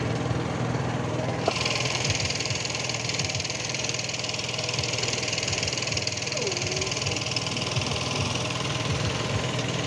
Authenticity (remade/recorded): remade